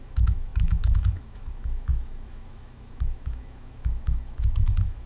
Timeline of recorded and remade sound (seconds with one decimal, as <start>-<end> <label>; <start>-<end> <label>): 0.0-5.1 remade